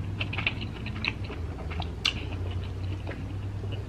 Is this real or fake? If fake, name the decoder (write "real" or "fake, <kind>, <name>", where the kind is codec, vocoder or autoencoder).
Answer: real